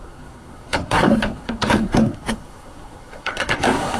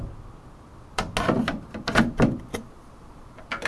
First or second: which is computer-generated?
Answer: first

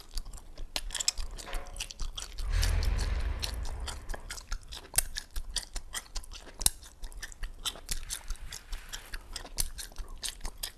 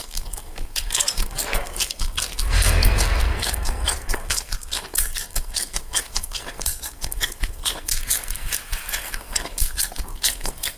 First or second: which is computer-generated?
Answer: second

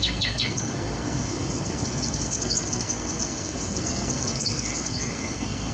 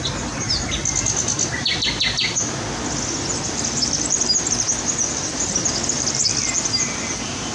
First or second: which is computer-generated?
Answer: first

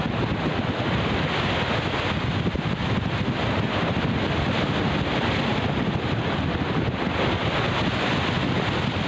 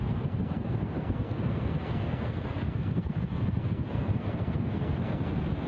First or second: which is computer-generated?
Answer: second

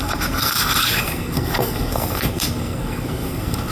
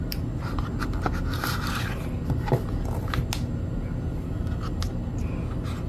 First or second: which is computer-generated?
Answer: first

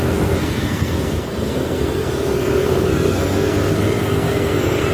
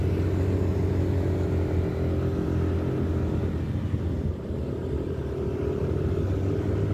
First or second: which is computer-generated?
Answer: first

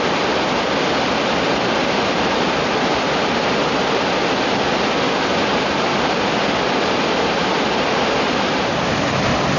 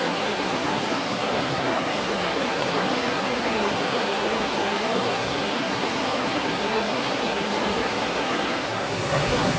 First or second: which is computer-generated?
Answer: second